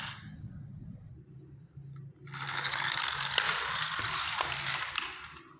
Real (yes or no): yes